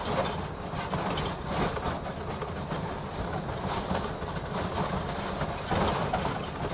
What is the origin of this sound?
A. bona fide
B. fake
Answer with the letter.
A